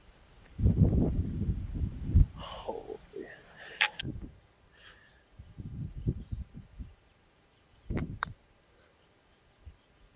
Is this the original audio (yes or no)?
no